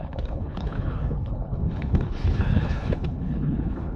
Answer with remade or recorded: remade